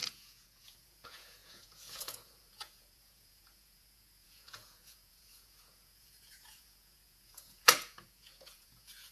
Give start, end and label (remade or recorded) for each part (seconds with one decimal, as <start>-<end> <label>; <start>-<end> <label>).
0.0-9.1 remade